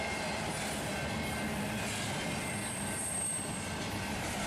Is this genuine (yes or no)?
yes